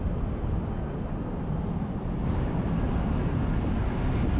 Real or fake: real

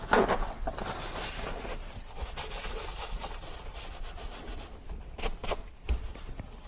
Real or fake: real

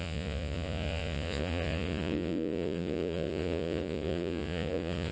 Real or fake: fake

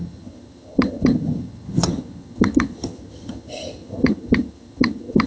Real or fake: fake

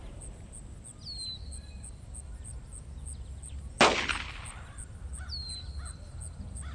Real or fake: real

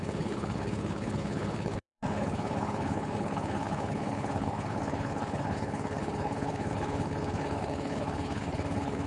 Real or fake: fake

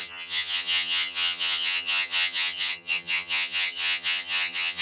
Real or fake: fake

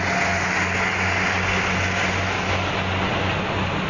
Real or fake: real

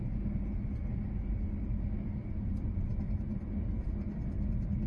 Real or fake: real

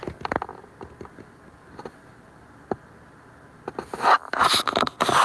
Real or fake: real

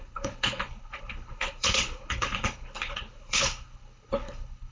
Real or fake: fake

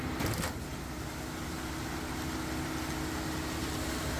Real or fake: real